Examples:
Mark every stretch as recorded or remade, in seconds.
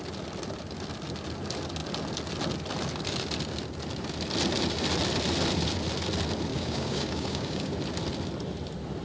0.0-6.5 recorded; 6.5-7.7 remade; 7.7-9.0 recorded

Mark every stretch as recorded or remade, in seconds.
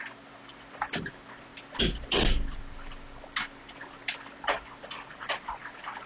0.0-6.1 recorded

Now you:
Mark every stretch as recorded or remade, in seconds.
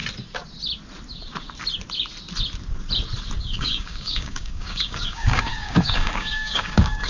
0.0-3.4 recorded; 3.4-7.1 remade